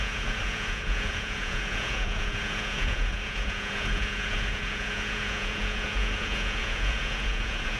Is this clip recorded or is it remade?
remade